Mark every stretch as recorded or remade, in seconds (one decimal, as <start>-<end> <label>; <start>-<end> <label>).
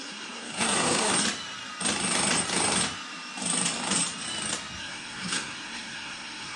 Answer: 0.0-1.1 remade; 1.1-4.8 recorded; 4.8-6.6 remade